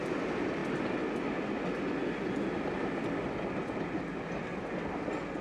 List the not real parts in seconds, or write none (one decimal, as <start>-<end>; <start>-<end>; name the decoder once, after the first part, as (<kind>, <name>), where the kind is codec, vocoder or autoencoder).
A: none